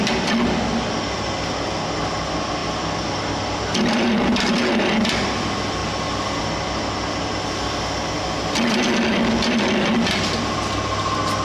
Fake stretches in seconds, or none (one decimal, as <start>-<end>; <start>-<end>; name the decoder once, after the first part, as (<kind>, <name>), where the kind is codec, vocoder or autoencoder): 2.6-4.5 (vocoder, BigVGAN v2); 5.8-6.4